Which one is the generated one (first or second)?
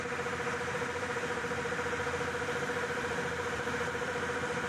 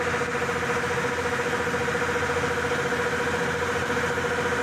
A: first